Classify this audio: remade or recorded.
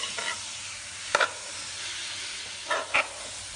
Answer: recorded